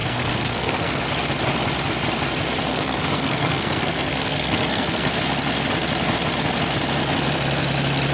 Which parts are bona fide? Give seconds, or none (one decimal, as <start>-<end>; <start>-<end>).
1.0-2.7; 5.1-8.1